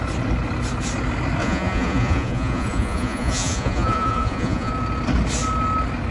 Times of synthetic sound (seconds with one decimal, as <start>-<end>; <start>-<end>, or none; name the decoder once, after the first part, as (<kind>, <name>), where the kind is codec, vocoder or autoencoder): 1.4-4.7 (vocoder, Vocos)